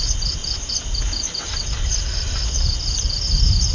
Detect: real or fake real